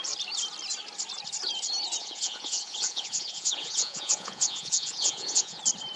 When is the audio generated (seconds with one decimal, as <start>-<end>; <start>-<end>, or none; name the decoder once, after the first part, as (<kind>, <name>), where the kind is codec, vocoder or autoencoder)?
2.0-5.6 (vocoder, Vocos)